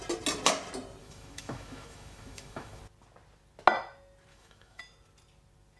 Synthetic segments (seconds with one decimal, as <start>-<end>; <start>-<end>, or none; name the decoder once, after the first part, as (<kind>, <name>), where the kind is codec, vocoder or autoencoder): 1.0-2.8 (autoencoder, DAC-VAE); 4.3-4.8